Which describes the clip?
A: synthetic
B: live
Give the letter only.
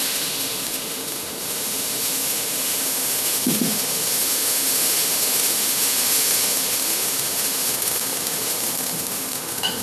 A